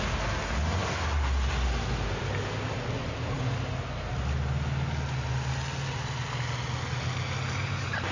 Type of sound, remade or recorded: recorded